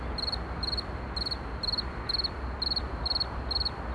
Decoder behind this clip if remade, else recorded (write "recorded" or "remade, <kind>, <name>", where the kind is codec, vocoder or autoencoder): recorded